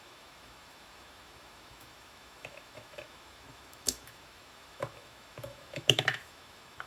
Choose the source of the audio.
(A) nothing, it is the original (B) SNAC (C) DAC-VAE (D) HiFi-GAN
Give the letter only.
C